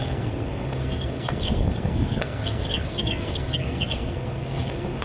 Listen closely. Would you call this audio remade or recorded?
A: remade